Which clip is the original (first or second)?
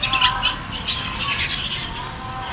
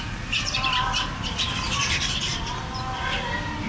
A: first